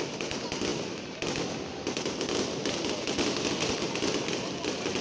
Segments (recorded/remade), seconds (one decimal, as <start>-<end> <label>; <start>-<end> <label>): 0.0-5.0 recorded